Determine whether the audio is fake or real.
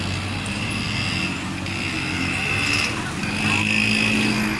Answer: real